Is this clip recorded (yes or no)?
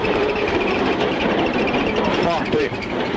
no